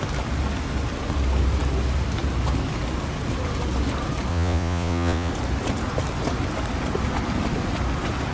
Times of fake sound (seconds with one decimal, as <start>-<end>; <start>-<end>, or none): 4.3-5.3